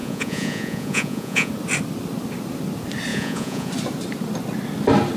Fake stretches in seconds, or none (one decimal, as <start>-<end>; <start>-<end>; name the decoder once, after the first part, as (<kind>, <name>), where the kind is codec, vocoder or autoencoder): 0.0-1.5 (vocoder, Vocos); 3.1-3.7